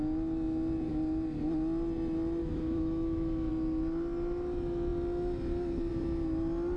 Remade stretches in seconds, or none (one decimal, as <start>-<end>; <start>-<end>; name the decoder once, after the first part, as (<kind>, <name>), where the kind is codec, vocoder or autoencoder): 2.4-3.5 (autoencoder, DAC-VAE)